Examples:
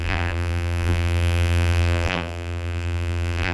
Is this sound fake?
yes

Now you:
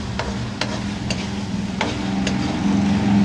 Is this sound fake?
no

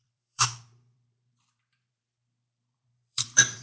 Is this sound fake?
yes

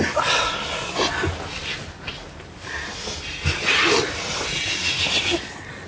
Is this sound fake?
no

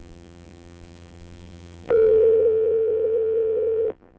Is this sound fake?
yes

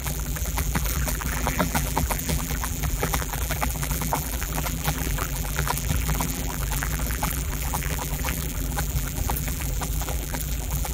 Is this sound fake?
yes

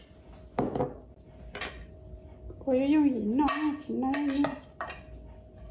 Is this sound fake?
no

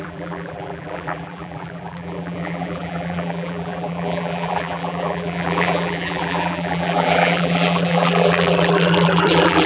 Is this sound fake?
yes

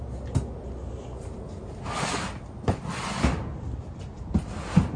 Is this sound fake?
no